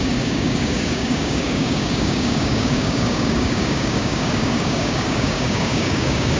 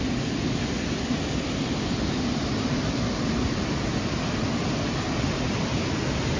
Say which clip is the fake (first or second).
first